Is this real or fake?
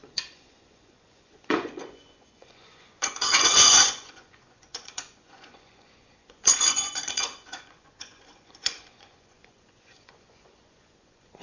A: fake